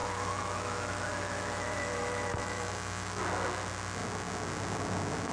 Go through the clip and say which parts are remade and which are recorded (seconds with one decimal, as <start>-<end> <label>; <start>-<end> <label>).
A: 0.0-3.2 remade; 3.2-5.3 recorded